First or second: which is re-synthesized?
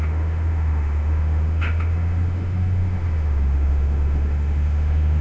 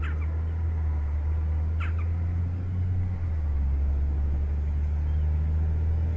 first